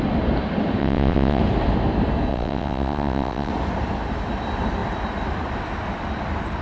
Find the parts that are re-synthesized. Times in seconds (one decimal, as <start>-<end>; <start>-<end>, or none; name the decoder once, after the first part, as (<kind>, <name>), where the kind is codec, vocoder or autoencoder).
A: 0.8-1.4 (vocoder, WaveNeXt); 2.3-3.5